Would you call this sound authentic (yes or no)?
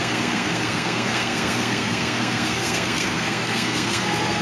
no